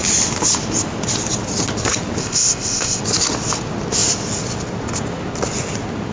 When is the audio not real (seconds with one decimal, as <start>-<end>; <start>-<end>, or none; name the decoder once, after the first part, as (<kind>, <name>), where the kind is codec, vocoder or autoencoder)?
2.2-3.0 (codec, ZipCodec)